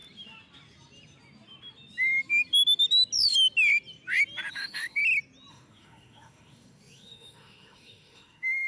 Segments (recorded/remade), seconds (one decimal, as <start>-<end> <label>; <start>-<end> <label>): 0.0-4.5 recorded; 4.5-5.0 remade; 5.0-5.5 recorded; 5.5-8.7 remade